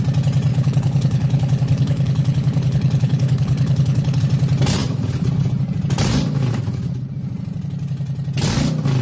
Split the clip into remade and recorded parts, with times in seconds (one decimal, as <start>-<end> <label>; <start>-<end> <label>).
0.0-0.5 recorded; 0.5-4.2 remade; 4.2-9.0 recorded

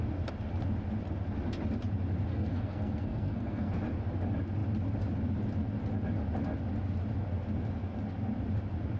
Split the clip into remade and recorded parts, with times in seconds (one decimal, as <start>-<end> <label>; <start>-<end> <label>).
0.0-2.3 recorded; 2.3-3.7 remade; 3.7-9.0 recorded

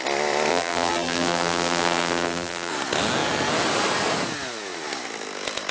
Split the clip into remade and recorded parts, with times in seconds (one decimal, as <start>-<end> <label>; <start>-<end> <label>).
0.0-0.5 recorded; 0.5-2.7 remade; 2.7-5.7 recorded